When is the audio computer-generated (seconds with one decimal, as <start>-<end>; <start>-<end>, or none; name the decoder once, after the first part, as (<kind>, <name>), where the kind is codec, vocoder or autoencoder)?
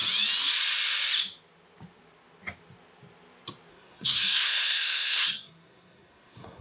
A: 3.7-6.6 (codec, SNAC)